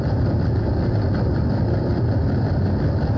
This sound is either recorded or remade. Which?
recorded